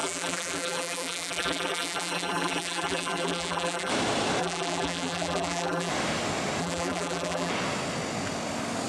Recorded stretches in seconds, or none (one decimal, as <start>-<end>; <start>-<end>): 3.9-4.4; 5.9-6.6; 7.5-8.9

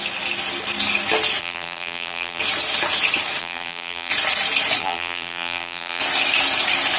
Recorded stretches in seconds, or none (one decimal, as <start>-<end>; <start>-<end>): 0.0-1.4; 2.4-3.4; 4.1-4.8; 6.0-7.0

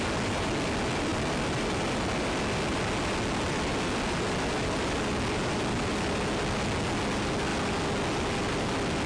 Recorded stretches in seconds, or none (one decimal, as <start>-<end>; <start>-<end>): 0.0-9.1

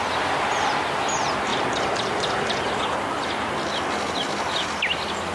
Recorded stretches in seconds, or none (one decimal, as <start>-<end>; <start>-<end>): 0.0-1.5; 2.8-5.3